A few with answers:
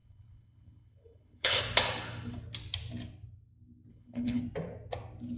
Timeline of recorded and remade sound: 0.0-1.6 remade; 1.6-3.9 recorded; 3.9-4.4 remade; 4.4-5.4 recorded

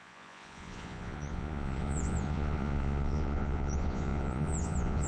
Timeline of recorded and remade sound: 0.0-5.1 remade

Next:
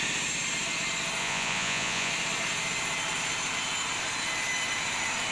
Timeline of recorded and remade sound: 0.0-1.2 recorded; 1.2-2.1 remade; 2.1-5.3 recorded

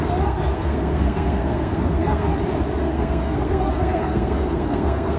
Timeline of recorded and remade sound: 0.0-2.3 remade; 2.3-2.8 recorded; 2.8-5.2 remade

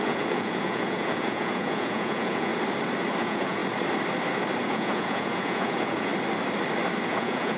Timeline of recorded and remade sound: 0.0-2.5 remade; 2.5-3.2 recorded; 3.2-3.6 remade; 3.6-4.6 recorded; 4.6-6.1 remade; 6.1-7.1 recorded; 7.1-7.6 remade